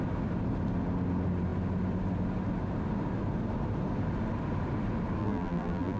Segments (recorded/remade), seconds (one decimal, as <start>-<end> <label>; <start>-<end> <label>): 0.0-5.2 recorded; 5.2-6.0 remade